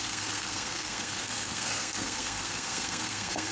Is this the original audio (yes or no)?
no